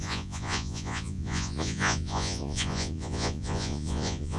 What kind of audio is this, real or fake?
fake